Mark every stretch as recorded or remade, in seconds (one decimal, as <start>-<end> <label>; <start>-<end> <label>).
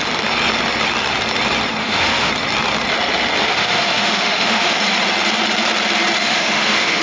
0.0-1.8 recorded; 1.8-2.3 remade; 2.3-3.4 recorded; 3.4-4.8 remade; 4.8-6.2 recorded; 6.2-7.0 remade